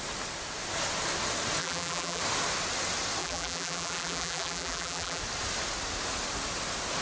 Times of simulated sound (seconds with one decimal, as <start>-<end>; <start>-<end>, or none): 1.6-2.2; 3.2-5.2